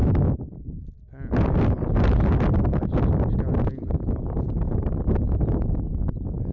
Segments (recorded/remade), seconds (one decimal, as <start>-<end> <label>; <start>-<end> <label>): 0.0-6.5 recorded